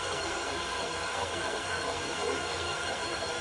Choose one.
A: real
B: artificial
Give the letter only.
B